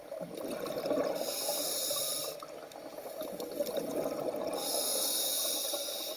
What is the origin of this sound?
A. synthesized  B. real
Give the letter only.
B